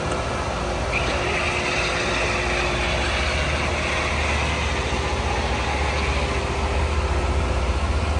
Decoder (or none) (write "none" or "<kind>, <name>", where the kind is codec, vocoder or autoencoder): none